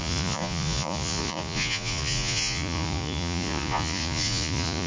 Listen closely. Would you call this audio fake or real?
fake